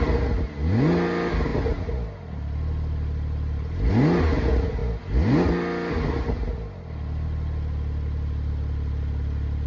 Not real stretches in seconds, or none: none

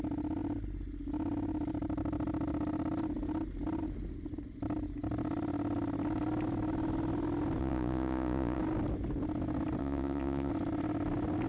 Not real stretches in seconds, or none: 7.6-8.6 (vocoder, Vocos); 9.8-10.5

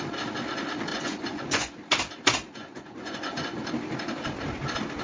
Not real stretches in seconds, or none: 0.9-1.7 (vocoder, Vocos); 2.6-3.6

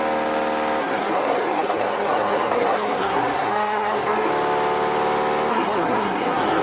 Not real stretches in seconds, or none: 0.8-4.3 (codec, SNAC); 5.5-6.6

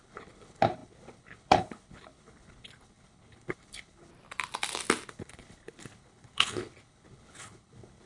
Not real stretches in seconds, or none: 0.0-4.1 (codec, HILCodec); 5.1-8.1

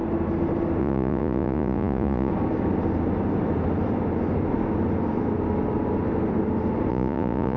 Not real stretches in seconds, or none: 0.8-2.3 (vocoder, Vocos); 6.9-7.6

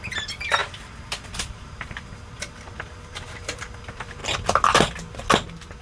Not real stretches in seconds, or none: 0.0-4.2 (vocoder, BigVGAN v2)